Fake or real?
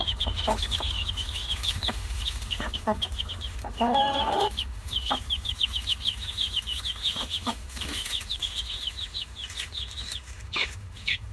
fake